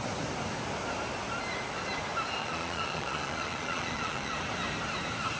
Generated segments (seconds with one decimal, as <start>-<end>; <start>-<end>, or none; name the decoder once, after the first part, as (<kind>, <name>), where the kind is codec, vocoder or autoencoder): 2.4-4.3 (vocoder, Vocos)